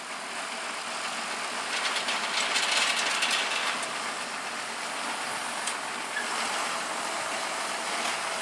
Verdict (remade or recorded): recorded